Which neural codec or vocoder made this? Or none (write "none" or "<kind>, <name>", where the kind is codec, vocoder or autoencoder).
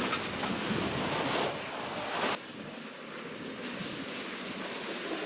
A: none